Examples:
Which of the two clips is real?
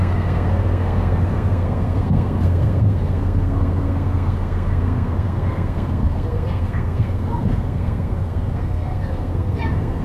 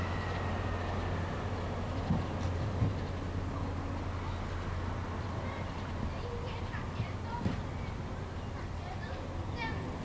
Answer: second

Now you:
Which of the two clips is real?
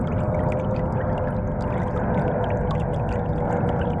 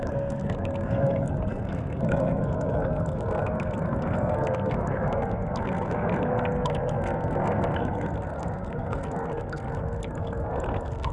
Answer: first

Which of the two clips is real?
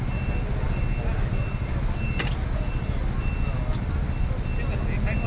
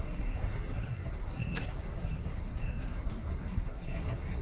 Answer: first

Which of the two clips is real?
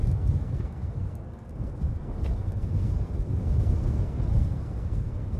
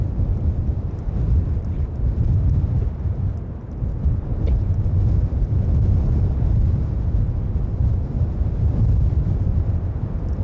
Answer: second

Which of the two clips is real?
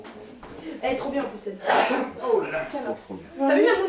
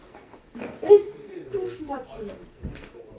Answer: first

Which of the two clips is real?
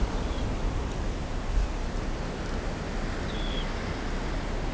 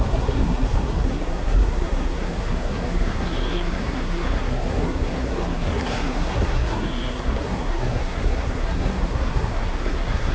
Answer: first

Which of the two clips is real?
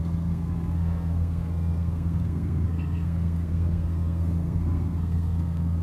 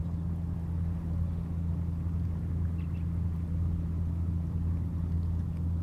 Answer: second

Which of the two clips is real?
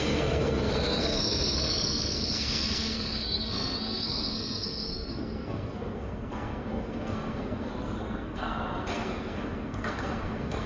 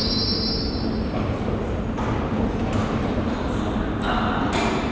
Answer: second